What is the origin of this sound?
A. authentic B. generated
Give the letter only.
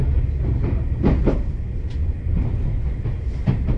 A